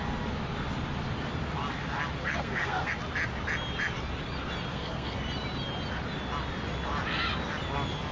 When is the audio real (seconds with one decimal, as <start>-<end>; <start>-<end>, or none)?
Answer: 0.0-2.2; 2.9-4.7; 5.2-8.1